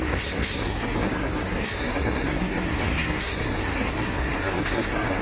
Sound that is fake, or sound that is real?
fake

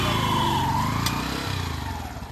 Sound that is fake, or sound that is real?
real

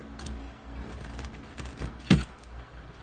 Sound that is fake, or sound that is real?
fake